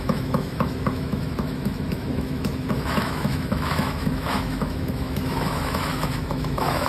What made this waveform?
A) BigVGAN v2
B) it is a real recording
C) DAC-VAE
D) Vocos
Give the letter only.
C